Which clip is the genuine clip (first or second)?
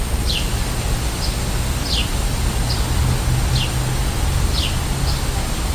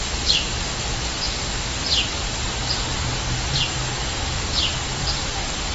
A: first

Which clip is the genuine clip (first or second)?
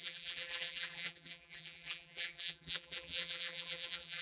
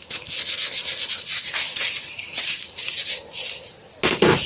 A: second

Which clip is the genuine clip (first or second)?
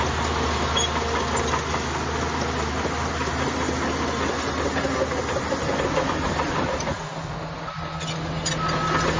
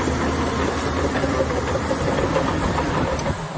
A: first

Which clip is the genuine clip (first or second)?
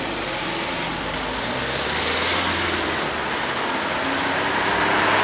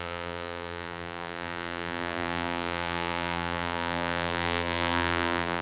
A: first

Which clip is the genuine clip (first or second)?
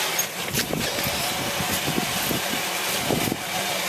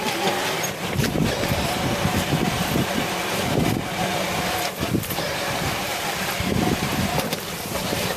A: first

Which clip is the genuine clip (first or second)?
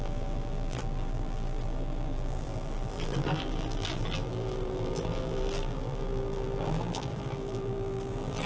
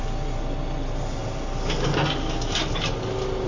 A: second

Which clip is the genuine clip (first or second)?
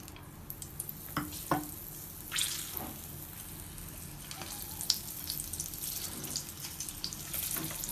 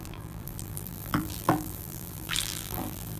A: first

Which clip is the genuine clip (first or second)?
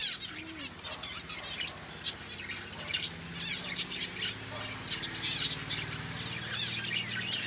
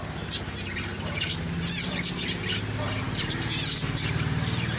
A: first